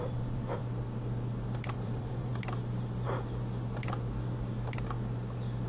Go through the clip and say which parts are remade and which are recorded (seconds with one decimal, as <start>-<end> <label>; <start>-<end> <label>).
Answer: 0.0-0.6 remade; 0.6-1.7 recorded; 1.7-2.3 remade; 2.3-5.7 recorded